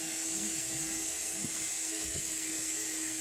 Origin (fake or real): fake